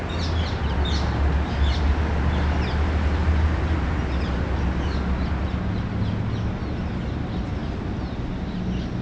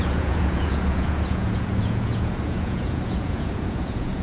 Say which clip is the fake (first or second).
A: second